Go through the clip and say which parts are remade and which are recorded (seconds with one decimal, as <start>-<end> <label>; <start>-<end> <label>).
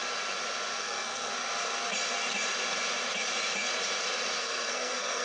0.0-0.8 recorded; 0.8-1.3 remade; 1.3-4.4 recorded; 4.4-5.2 remade